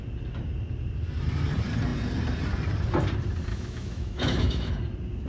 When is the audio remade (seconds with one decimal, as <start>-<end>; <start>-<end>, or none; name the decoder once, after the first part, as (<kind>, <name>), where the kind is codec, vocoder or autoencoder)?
3.5-4.7 (autoencoder, DAC-VAE)